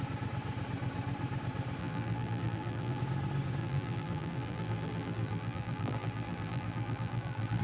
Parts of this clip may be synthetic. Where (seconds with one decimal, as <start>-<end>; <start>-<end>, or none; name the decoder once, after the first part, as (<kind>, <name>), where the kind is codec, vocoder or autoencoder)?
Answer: 1.8-3.0 (vocoder, BigVGAN v2); 3.6-7.6